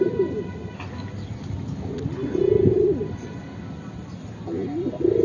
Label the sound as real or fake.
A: real